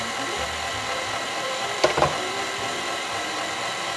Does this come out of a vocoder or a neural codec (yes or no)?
yes